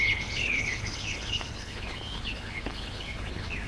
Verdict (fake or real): fake